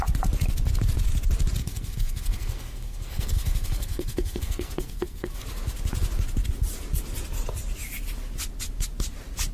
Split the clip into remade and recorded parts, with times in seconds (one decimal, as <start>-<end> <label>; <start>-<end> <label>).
0.0-1.6 recorded; 1.6-5.4 remade; 5.4-9.5 recorded